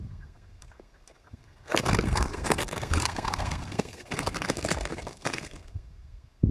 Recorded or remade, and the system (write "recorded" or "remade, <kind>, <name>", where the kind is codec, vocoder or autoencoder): remade, codec, SNAC